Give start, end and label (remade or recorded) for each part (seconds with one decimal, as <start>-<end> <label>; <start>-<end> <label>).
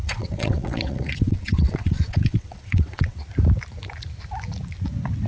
0.0-3.2 remade; 3.2-5.3 recorded